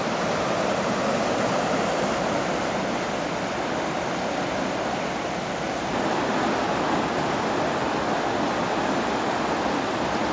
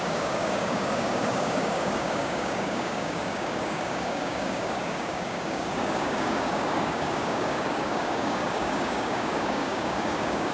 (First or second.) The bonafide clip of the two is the first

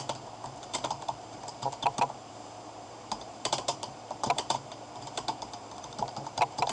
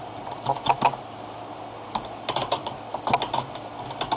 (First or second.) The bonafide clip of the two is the second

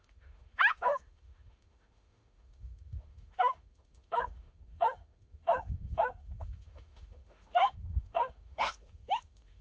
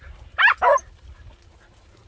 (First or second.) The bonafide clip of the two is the second